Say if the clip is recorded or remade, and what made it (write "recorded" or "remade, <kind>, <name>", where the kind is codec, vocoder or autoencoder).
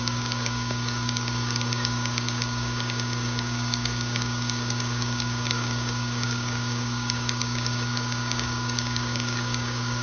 remade, codec, DAC